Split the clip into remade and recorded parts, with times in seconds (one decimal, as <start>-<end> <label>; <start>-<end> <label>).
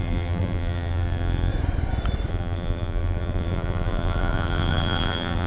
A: 0.0-1.5 remade; 1.5-2.3 recorded; 2.3-5.5 remade